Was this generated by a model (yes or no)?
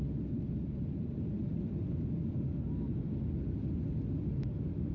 no